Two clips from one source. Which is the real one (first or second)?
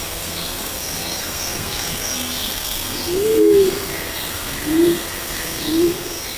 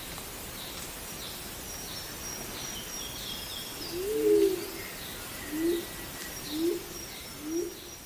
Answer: second